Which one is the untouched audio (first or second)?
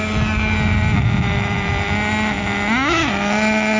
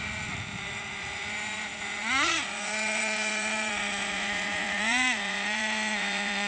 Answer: first